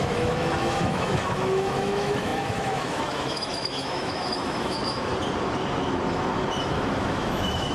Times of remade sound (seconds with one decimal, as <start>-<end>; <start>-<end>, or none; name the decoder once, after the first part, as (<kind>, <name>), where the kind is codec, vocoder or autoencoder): 0.0-5.1 (autoencoder, DAC-VAE); 6.6-7.7